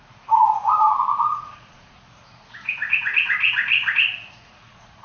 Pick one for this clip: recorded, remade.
remade